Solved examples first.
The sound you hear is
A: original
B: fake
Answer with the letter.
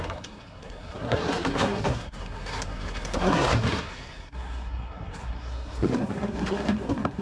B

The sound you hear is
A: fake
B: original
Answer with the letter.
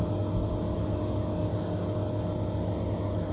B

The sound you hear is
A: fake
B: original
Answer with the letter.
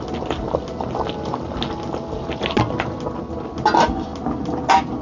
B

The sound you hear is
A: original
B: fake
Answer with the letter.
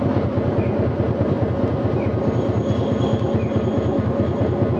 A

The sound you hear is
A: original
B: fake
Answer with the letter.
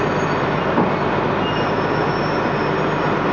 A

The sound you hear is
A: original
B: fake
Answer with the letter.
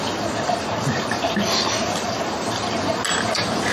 A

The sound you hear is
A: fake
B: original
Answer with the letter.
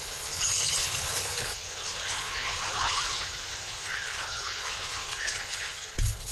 A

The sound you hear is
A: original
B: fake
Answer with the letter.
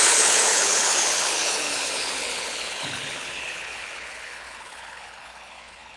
B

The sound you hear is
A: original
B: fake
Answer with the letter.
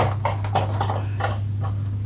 A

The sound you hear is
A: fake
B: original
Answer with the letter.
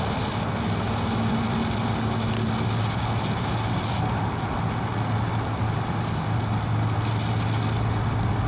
B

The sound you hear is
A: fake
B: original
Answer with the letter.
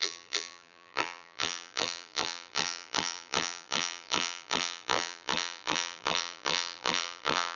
A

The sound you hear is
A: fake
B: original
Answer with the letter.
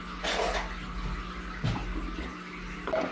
B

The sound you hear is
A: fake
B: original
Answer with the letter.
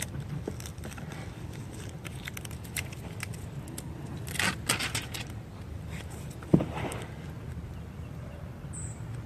B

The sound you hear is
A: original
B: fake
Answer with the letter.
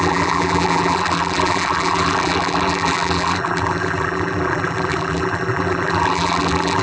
B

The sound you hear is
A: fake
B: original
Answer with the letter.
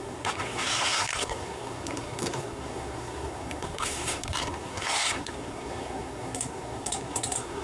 A